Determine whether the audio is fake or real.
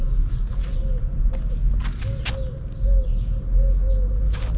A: real